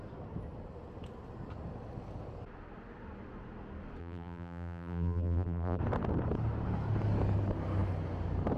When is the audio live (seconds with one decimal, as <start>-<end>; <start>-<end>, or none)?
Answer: 0.0-4.0; 5.8-8.6